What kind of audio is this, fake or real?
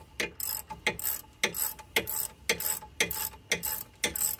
real